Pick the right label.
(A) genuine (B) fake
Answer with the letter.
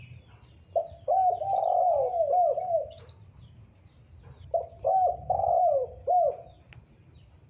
A